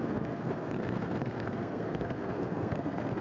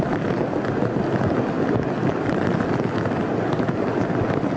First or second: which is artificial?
first